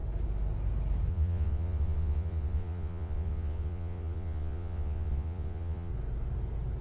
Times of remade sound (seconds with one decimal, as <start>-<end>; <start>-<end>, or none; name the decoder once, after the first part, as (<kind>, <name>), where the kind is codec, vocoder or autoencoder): 1.1-5.9 (vocoder, Vocos)